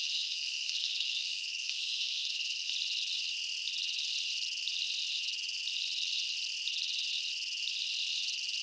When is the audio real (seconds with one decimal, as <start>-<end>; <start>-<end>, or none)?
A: 2.7-8.6